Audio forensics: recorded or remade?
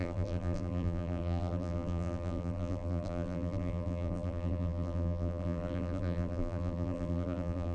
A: remade